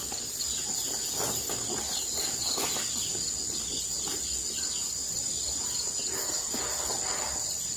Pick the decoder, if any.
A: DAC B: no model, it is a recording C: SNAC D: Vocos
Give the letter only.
B